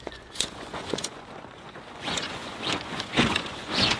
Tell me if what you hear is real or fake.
fake